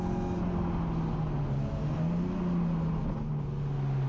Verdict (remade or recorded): recorded